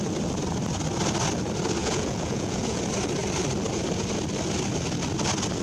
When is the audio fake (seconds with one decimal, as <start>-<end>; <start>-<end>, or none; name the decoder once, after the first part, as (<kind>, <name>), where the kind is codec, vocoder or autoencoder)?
1.8-2.8 (vocoder, Vocos)

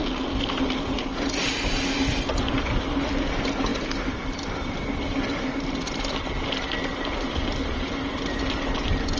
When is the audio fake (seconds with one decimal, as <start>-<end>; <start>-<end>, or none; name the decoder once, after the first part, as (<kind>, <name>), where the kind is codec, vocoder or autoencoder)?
none

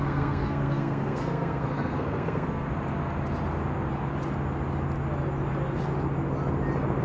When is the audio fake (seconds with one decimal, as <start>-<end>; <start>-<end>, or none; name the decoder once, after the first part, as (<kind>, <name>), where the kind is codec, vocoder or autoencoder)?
0.0-2.7 (codec, SNAC)

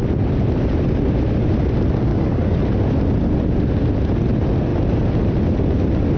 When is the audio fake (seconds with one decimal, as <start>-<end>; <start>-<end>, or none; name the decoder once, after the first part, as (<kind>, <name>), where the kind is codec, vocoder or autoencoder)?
2.1-2.6 (codec, DAC)

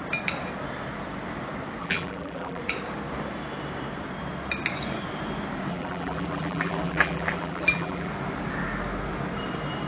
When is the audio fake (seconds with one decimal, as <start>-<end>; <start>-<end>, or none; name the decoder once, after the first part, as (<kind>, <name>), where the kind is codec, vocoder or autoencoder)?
1.8-2.6 (vocoder, BigVGAN v2); 5.7-8.1

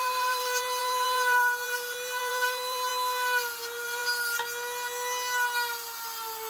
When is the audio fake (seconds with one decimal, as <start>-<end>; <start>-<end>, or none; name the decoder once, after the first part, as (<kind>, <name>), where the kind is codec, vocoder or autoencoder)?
0.0-2.9 (vocoder, BigVGAN v2); 3.6-4.0

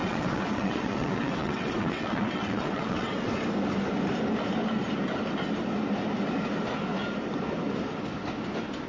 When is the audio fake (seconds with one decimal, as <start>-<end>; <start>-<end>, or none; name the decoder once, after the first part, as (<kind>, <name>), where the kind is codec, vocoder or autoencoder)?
0.0-3.3 (vocoder, WaveNeXt)